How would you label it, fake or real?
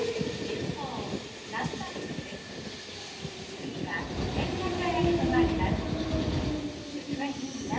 real